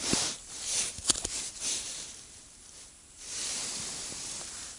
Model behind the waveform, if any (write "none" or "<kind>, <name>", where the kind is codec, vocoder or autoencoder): vocoder, BigVGAN v2